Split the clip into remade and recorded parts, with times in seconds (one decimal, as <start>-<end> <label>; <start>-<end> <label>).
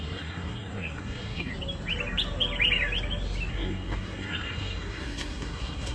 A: 0.0-1.5 remade; 1.5-3.5 recorded; 3.5-5.9 remade